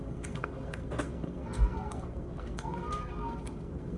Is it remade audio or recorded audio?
remade